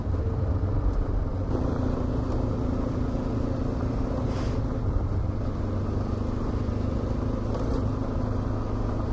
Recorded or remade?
recorded